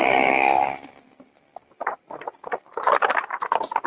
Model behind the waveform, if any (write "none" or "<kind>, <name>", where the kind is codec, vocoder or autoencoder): none